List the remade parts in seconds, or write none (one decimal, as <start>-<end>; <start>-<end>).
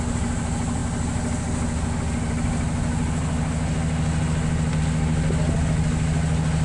none